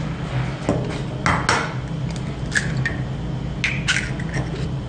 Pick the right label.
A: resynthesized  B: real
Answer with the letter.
B